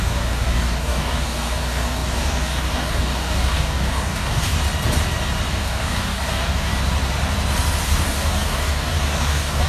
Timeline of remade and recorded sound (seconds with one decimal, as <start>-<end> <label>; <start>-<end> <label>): 0.0-4.6 remade; 4.6-5.5 recorded; 5.5-6.7 remade; 6.7-7.8 recorded; 7.8-9.7 remade